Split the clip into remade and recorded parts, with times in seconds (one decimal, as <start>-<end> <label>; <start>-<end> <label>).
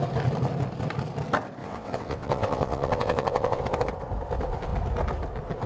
0.0-1.6 recorded; 1.6-3.6 remade; 3.6-5.7 recorded